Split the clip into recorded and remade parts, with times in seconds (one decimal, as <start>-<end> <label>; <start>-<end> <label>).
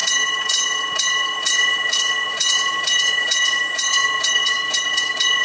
0.0-5.4 remade